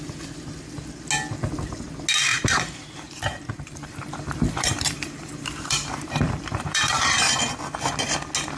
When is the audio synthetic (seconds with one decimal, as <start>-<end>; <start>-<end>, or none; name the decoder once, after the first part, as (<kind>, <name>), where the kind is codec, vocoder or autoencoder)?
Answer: 2.3-7.4 (vocoder, BigVGAN v2)